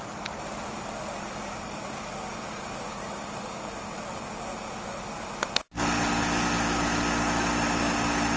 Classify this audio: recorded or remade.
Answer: recorded